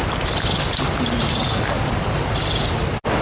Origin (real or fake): real